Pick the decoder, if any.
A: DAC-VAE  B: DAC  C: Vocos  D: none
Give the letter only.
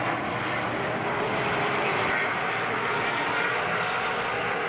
D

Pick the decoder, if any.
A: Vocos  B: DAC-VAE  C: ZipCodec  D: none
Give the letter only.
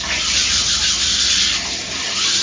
D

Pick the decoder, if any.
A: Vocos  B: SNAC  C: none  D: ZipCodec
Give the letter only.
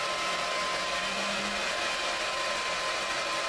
C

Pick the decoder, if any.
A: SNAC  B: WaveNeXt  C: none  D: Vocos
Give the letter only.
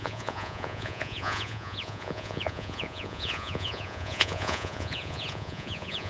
D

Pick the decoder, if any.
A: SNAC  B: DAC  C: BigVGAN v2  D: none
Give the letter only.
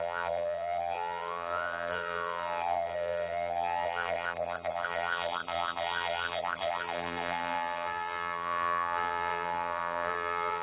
C